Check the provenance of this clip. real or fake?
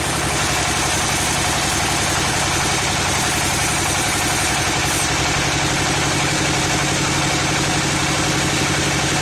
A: real